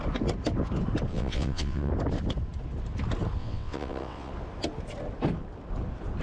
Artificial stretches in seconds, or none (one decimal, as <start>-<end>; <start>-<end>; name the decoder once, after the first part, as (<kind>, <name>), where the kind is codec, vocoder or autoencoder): 1.1-1.9 (vocoder, WaveNeXt); 3.4-4.3